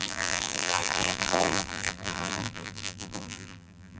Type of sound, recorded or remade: remade